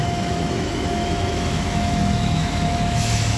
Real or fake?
fake